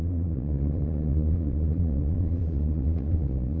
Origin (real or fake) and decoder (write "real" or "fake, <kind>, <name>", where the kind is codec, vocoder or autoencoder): fake, vocoder, Vocos